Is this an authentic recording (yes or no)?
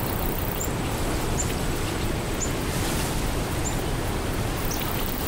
yes